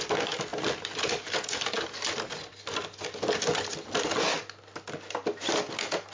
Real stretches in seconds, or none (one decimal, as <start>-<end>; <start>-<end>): 0.0-6.1